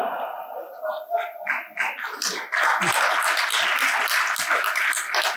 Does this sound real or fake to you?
real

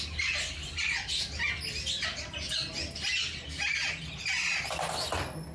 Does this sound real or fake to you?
real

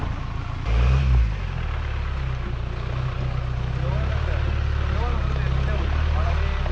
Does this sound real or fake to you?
real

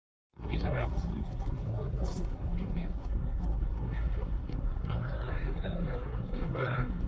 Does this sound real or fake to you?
fake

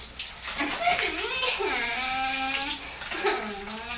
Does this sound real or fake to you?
real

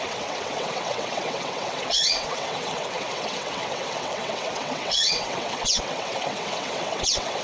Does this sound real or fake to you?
fake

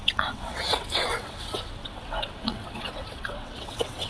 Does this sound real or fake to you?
fake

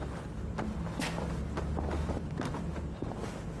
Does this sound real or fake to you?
real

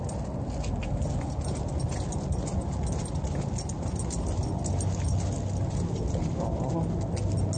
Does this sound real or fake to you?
real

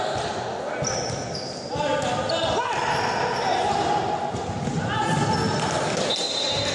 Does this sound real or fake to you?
real